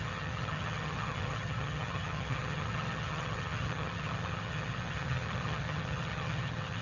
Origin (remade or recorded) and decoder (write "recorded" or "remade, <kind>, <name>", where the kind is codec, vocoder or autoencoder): remade, vocoder, HiFi-GAN